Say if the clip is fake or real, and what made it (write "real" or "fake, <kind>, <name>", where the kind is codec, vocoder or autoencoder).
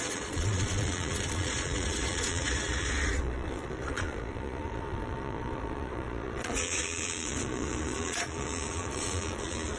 fake, vocoder, Vocos